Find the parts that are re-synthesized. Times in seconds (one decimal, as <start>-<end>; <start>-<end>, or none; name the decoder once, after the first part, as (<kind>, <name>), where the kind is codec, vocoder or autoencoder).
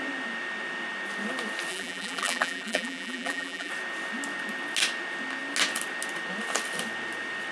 1.7-3.7 (vocoder, BigVGAN v2)